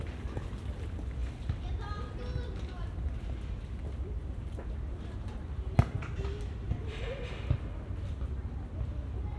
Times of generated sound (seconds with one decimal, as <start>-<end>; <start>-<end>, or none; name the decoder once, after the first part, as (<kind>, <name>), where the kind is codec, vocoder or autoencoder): none